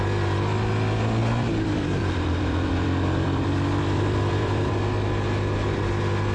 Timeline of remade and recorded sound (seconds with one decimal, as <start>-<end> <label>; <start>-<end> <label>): 0.0-1.2 recorded; 1.2-4.8 remade; 4.8-6.3 recorded